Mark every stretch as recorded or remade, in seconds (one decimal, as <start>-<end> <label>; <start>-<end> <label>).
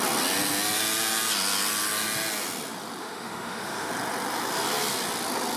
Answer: 0.0-3.0 recorded; 3.0-3.9 remade; 3.9-5.6 recorded